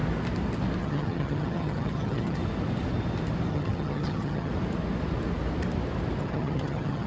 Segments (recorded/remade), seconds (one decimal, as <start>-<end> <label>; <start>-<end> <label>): 0.0-0.8 recorded; 0.8-2.4 remade; 2.4-3.5 recorded; 3.5-4.5 remade; 4.5-6.2 recorded; 6.2-7.1 remade